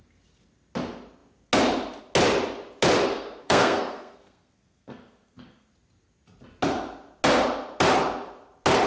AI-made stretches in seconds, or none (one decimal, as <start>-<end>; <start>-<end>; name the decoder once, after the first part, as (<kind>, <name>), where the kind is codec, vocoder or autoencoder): 3.1-5.7 (codec, SNAC)